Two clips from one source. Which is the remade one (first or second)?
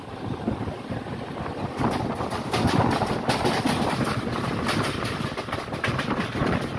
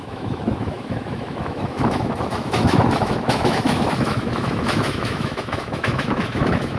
second